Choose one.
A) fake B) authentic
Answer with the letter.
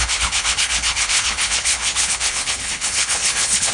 A